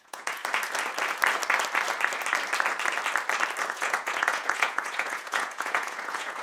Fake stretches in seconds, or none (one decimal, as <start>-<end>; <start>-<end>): 0.0-0.4; 3.7-6.4